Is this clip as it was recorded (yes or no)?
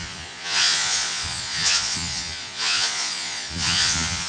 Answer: no